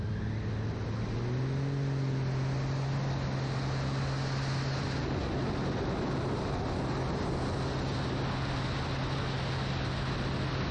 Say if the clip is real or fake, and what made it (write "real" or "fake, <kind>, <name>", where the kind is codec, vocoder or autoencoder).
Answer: real